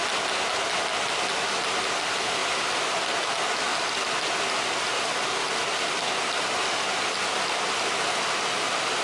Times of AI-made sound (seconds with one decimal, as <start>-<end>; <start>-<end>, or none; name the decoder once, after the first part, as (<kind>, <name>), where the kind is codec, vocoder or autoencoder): none